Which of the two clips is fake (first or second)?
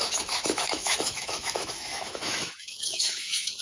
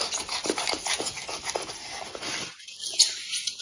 first